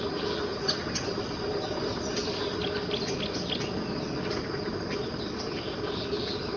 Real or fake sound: real